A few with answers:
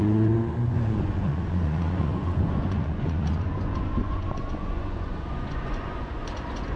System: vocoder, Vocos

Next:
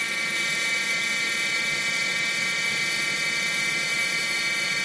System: vocoder, Vocos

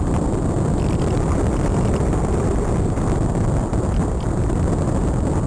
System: none